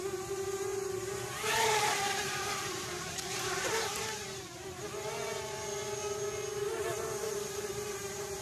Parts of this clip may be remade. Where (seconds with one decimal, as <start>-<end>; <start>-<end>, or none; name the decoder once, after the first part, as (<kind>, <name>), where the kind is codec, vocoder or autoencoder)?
0.0-4.8 (vocoder, BigVGAN v2); 6.9-8.4